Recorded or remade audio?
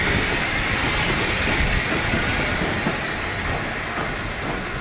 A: recorded